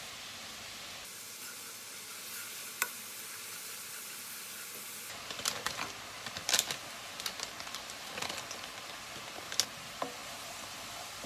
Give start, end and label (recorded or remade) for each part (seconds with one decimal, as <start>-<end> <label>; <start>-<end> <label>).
0.0-11.3 recorded